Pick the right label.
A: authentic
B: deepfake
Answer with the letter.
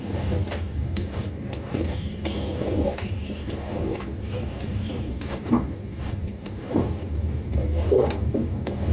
B